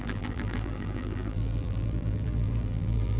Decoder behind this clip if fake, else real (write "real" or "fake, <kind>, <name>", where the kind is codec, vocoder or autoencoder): fake, vocoder, BigVGAN v2